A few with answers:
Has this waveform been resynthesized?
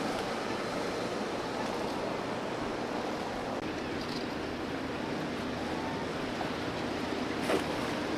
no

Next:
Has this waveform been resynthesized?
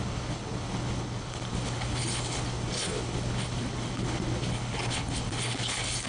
yes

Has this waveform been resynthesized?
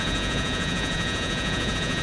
yes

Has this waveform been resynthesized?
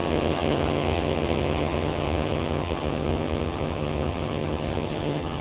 yes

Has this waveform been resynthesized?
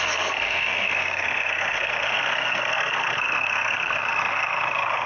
yes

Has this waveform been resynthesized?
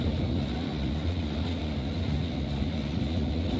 yes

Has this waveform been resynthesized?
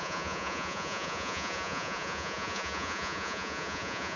yes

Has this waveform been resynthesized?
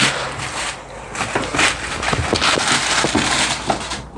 no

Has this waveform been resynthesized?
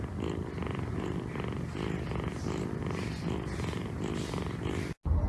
no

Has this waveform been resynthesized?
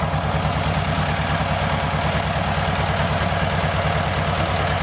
no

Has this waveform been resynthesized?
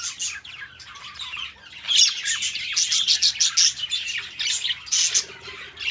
no